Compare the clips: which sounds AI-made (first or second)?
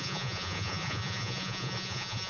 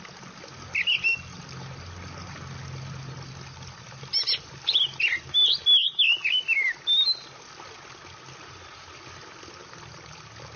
first